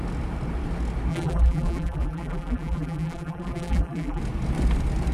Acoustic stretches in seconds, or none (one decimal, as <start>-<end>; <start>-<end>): 0.0-1.1; 4.2-5.1